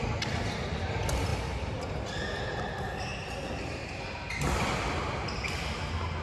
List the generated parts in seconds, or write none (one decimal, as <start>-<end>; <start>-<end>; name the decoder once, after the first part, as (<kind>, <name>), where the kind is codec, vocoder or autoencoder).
1.3-2.6 (vocoder, BigVGAN v2); 3.1-4.0